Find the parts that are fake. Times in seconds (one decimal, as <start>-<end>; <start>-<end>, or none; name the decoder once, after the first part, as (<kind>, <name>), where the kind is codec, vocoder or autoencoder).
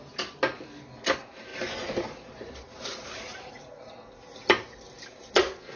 1.5-3.5 (vocoder, BigVGAN v2)